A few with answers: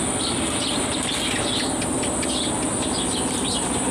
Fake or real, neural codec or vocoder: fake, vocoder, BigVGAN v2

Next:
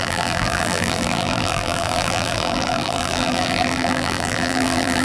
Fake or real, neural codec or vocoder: fake, vocoder, BigVGAN v2